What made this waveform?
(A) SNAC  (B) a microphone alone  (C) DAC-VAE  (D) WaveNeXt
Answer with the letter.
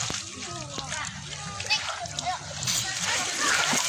B